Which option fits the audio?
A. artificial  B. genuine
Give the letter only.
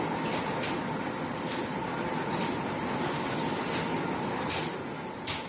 B